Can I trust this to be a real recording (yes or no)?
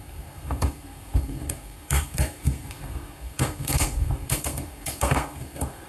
no